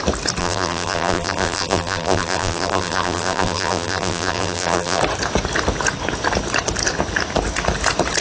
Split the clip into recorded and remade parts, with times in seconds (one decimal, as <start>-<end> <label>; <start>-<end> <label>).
0.0-0.4 recorded; 0.4-5.0 remade; 5.0-8.2 recorded